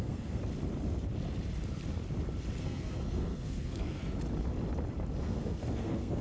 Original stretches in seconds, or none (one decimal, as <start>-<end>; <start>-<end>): 0.4-2.6; 4.0-5.2